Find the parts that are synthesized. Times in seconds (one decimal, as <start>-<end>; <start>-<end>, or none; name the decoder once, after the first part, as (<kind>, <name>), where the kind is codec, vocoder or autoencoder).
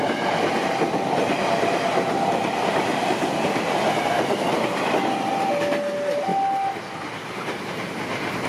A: none